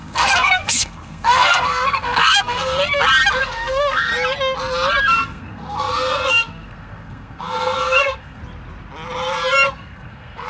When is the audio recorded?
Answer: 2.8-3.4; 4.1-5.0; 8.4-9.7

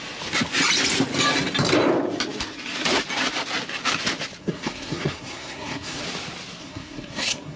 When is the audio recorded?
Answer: 0.0-4.4; 6.0-6.6

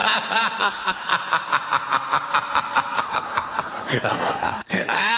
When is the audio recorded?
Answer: 0.0-0.6; 1.0-3.0

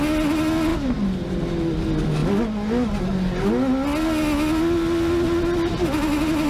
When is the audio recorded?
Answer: 0.0-6.5

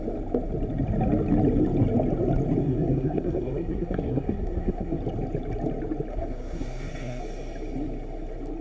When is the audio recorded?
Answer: 0.0-2.6; 5.0-6.1; 7.2-8.6

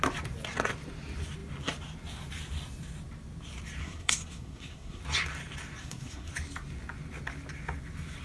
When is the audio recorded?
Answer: 0.0-3.8; 5.0-5.8; 6.3-8.2

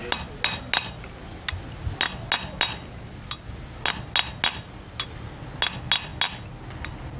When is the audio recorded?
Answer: 0.0-7.2